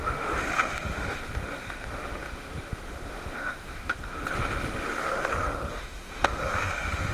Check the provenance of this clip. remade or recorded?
remade